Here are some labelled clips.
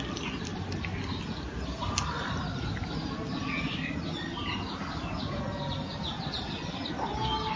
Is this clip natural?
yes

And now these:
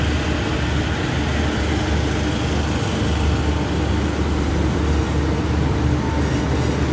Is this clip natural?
yes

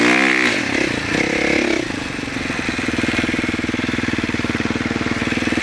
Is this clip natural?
yes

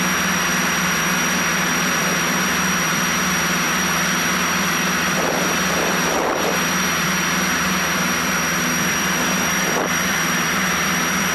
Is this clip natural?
no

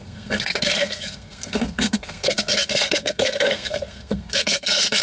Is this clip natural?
no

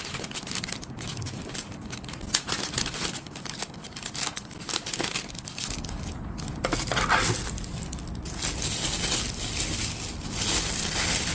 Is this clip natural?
yes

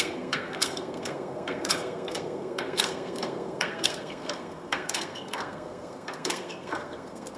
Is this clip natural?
no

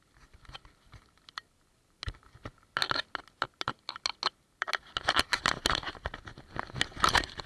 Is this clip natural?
yes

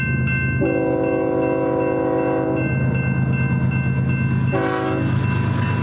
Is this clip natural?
yes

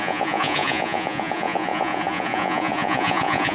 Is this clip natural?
no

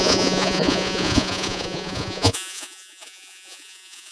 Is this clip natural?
no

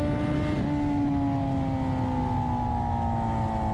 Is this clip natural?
yes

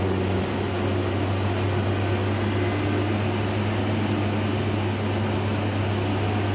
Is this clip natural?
yes